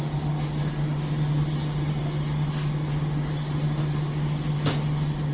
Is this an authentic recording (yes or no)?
yes